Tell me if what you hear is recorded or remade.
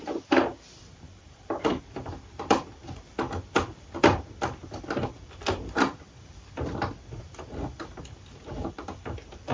remade